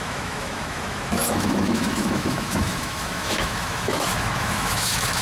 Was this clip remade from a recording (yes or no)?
yes